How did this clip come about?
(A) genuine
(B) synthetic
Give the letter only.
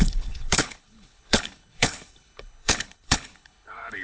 B